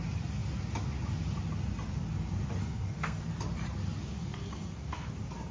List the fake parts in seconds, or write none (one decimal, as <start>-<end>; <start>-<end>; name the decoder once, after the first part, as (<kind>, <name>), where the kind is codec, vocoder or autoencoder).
2.6-3.2 (codec, SNAC); 4.2-5.1

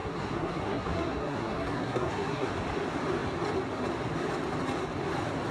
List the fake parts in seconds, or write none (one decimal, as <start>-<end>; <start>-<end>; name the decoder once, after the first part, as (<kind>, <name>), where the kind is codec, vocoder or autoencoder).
0.0-2.5 (codec, SNAC)